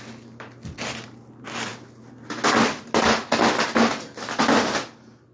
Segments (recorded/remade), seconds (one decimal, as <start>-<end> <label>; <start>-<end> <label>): 0.0-5.3 recorded

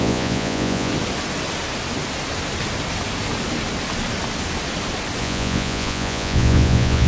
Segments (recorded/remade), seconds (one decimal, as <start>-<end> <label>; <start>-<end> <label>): 0.0-0.9 remade; 0.9-5.2 recorded; 5.2-7.1 remade

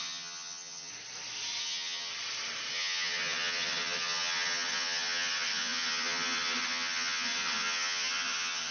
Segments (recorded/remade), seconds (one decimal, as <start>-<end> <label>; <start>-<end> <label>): 0.0-0.9 remade; 0.9-1.6 recorded; 1.6-2.1 remade; 2.1-2.7 recorded; 2.7-8.7 remade